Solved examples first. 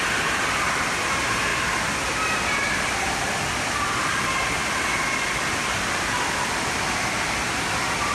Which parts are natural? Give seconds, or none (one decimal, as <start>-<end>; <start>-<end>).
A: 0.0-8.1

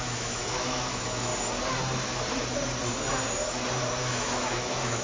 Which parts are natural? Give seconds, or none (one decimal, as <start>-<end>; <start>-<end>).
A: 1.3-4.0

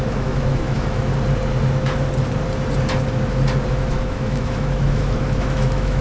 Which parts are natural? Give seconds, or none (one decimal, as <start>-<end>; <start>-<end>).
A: 1.1-3.7

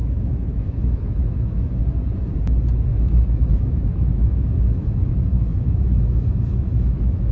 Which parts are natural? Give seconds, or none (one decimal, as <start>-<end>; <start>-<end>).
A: 1.8-2.9

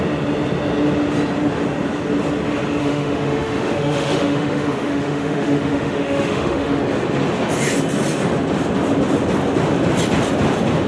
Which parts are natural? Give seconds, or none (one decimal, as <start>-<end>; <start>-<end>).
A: 0.0-2.8; 6.8-10.9

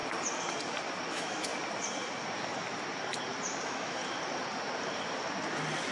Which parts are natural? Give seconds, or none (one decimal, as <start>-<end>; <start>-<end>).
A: 0.0-1.1; 1.5-3.6; 4.0-5.9